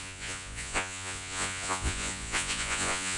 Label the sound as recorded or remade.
remade